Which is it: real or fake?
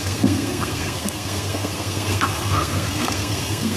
fake